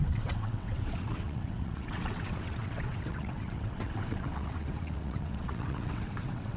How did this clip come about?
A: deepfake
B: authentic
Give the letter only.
A